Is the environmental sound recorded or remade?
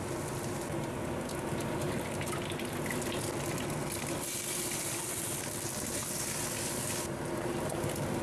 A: recorded